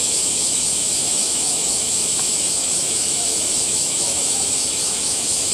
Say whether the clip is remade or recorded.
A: remade